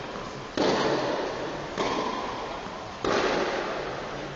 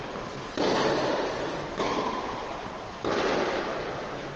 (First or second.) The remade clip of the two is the second